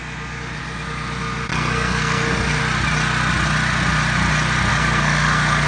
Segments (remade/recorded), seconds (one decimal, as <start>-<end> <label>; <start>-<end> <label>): 0.0-1.5 recorded; 1.5-2.6 remade; 2.6-4.7 recorded; 4.7-5.7 remade